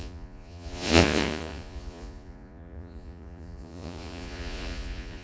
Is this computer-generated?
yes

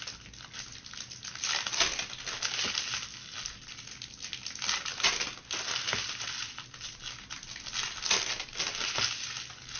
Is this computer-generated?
no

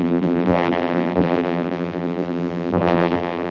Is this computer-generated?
yes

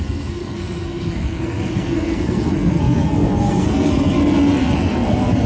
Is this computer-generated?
yes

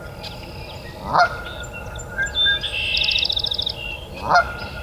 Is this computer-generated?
no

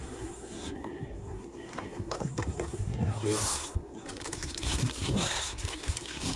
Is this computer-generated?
yes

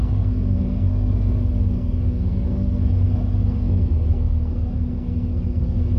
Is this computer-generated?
yes